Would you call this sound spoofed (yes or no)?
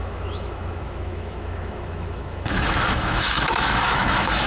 yes